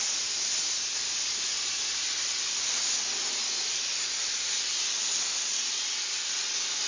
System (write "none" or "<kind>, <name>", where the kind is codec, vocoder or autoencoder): none